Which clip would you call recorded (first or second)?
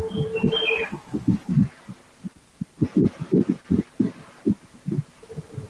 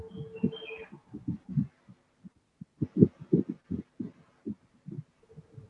second